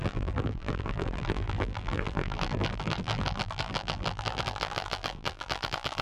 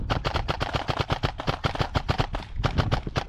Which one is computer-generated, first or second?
first